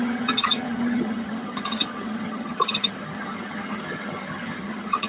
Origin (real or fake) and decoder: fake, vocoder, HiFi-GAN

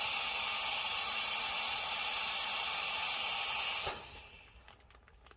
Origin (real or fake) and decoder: real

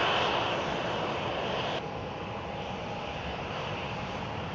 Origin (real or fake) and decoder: real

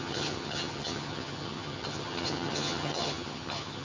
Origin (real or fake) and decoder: fake, vocoder, HiFi-GAN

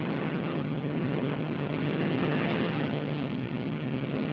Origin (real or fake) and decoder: fake, vocoder, HiFi-GAN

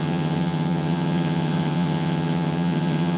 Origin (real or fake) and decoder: fake, vocoder, HiFi-GAN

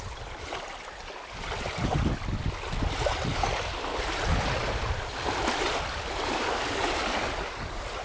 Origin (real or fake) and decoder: real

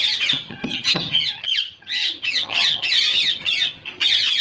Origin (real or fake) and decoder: fake, vocoder, HiFi-GAN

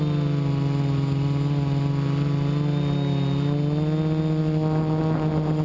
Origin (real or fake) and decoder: real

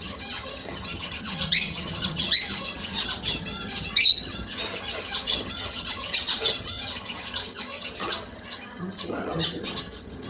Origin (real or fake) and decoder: fake, vocoder, HiFi-GAN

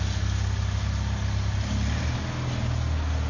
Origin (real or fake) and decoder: real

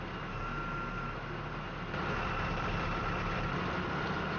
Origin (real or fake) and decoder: real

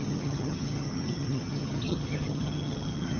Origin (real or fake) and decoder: fake, vocoder, HiFi-GAN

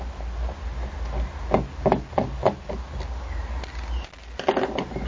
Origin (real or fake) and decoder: real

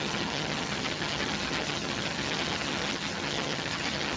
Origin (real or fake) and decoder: fake, vocoder, HiFi-GAN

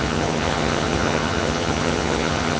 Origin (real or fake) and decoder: fake, vocoder, HiFi-GAN